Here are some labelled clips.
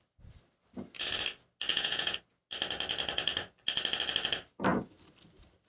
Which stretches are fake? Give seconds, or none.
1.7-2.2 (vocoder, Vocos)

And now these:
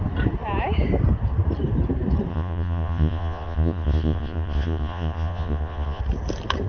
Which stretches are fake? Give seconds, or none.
2.3-6.0 (vocoder, Vocos)

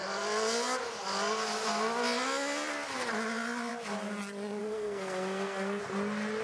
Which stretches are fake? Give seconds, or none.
4.6-5.8 (codec, SNAC)

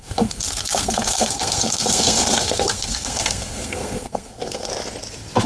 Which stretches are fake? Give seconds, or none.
0.0-4.7 (codec, SNAC)

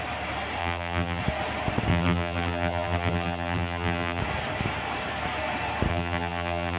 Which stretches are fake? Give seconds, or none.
0.6-1.2 (vocoder, BigVGAN v2); 1.9-4.2; 5.9-6.8

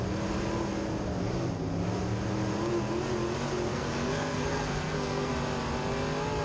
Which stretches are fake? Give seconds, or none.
3.7-5.3 (codec, SNAC)

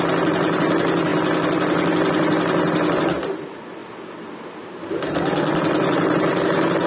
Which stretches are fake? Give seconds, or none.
none

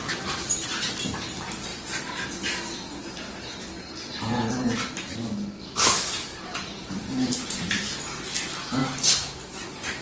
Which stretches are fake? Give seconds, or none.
0.0-0.9 (vocoder, BigVGAN v2); 6.3-7.9